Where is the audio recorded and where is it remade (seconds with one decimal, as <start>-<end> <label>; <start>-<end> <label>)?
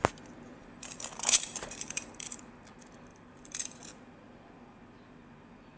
0.0-0.6 recorded; 0.6-2.5 remade; 2.5-3.1 recorded; 3.1-3.8 remade; 3.8-5.8 recorded